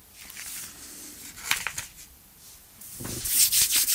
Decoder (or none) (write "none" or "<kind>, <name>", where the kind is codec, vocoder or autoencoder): vocoder, BigVGAN v2